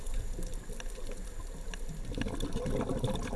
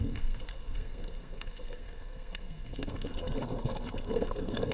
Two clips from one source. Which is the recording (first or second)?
first